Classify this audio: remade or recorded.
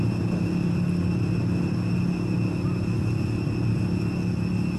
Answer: recorded